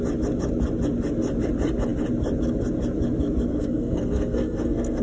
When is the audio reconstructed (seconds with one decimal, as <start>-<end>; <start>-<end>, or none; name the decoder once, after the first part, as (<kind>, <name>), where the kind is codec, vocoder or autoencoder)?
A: 3.5-5.0 (codec, SNAC)